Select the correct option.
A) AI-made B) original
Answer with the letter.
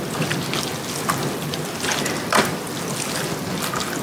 B